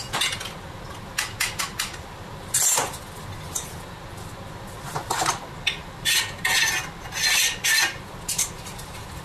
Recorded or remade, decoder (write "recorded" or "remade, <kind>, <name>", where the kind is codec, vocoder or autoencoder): recorded